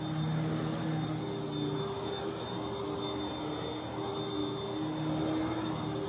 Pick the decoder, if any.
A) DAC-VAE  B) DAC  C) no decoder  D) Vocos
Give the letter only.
C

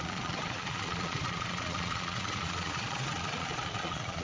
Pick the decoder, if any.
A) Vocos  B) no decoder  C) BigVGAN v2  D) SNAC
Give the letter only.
A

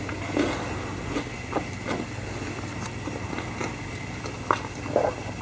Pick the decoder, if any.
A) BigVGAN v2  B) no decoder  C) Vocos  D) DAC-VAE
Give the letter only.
B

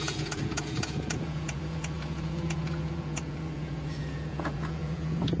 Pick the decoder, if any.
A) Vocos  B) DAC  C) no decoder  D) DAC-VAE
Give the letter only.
A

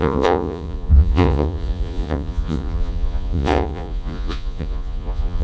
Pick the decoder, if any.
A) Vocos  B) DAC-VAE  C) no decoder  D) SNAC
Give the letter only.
A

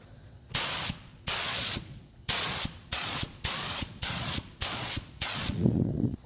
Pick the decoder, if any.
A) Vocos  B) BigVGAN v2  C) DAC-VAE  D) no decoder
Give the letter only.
A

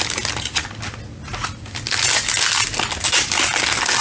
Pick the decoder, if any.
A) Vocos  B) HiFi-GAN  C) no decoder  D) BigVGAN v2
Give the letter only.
C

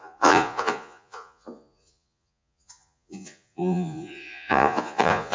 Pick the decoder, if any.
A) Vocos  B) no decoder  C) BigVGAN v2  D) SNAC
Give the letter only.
A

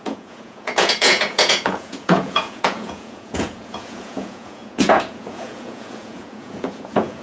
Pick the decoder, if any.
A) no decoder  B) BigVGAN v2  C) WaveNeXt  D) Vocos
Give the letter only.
D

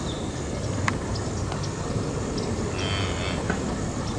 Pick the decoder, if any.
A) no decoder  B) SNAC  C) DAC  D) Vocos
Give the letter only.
A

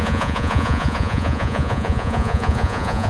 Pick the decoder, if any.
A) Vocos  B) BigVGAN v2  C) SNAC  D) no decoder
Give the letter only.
A